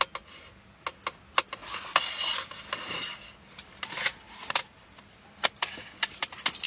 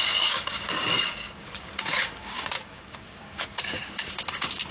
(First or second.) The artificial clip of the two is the second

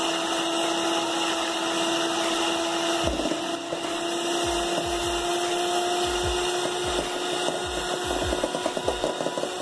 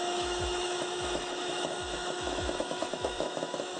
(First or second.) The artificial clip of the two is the second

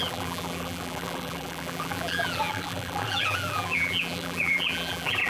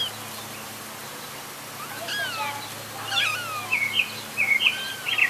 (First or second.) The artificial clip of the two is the first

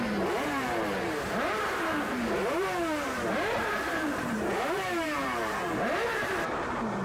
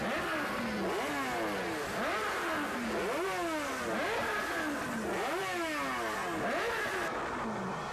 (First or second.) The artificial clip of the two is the first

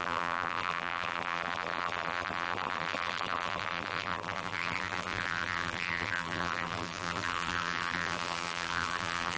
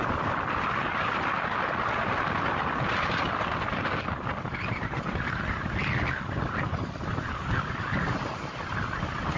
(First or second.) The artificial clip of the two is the first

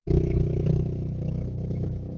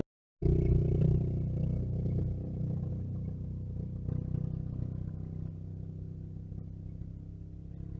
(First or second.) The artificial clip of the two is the first